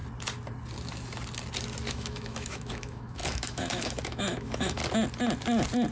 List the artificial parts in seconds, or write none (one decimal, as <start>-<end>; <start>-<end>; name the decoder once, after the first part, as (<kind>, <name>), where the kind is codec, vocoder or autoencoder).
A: 1.9-4.8 (autoencoder, DAC-VAE)